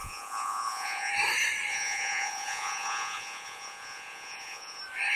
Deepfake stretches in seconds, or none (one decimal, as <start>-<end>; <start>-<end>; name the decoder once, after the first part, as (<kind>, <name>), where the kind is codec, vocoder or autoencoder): 0.0-1.1 (vocoder, Vocos); 1.7-4.8